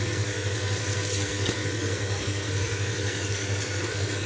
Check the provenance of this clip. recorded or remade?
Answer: remade